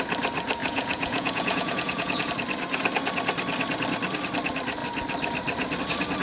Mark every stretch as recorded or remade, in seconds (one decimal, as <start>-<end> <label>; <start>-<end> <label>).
0.0-0.6 recorded; 0.6-2.3 remade; 2.3-6.2 recorded